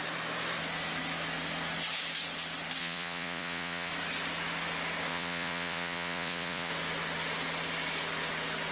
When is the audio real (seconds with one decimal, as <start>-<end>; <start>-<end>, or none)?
0.0-2.8; 3.9-5.1; 6.7-8.7